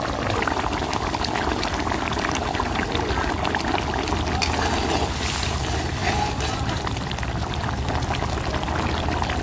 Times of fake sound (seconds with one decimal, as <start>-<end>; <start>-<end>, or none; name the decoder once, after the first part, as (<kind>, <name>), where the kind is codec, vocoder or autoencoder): 6.0-7.3 (vocoder, BigVGAN v2)